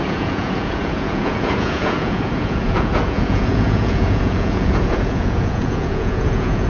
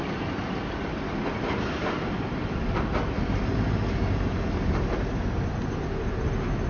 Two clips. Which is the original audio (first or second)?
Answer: second